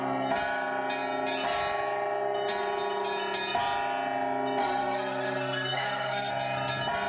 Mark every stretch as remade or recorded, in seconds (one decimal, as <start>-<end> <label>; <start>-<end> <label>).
0.0-4.6 recorded; 4.6-6.3 remade; 6.3-7.1 recorded